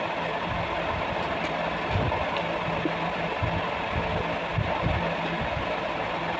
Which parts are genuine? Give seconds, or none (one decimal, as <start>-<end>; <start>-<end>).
0.0-6.4